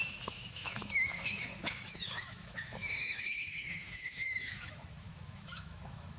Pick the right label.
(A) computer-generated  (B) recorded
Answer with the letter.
A